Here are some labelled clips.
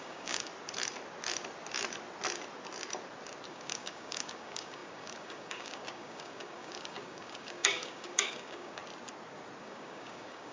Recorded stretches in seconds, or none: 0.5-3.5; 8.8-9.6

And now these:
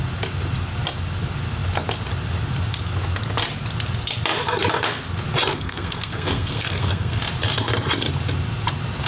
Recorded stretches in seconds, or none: 0.0-5.5; 7.2-9.1

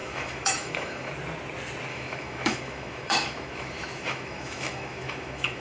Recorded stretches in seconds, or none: 1.1-1.9

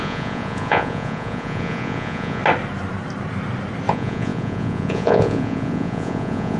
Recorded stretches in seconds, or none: 2.4-3.9